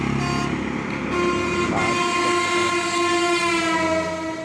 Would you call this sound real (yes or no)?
yes